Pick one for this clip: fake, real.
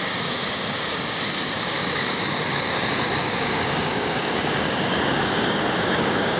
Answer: fake